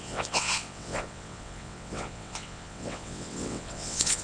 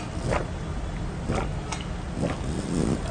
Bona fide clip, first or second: second